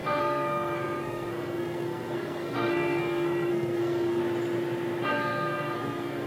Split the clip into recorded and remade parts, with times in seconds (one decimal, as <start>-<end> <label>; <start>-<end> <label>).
0.0-4.2 remade; 4.2-5.1 recorded; 5.1-6.3 remade